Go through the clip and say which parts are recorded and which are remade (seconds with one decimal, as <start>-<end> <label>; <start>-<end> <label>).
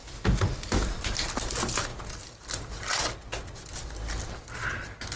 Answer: 0.0-5.2 recorded